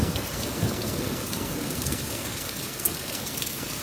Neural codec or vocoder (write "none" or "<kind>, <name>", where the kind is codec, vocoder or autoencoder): codec, SNAC